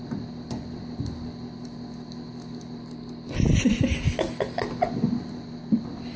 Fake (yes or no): yes